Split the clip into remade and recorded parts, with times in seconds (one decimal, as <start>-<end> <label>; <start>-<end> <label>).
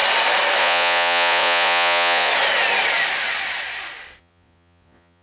0.0-0.6 recorded; 0.6-2.3 remade; 2.3-4.2 recorded; 4.2-5.2 remade